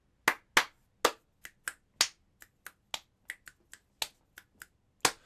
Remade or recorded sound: recorded